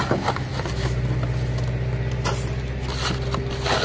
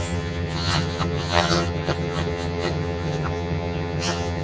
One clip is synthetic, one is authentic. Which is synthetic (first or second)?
second